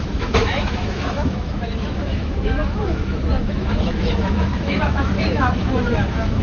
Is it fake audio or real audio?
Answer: fake